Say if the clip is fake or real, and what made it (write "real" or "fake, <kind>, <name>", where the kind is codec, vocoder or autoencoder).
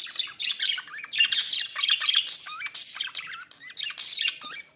fake, vocoder, BigVGAN v2